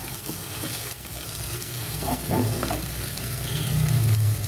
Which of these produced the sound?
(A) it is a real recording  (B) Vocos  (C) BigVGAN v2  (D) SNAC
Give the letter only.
D